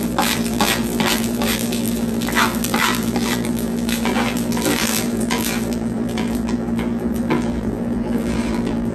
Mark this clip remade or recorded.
remade